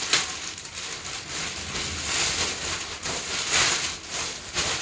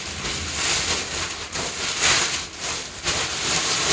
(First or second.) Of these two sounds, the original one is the second